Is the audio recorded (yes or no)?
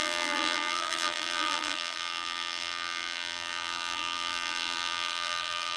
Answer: no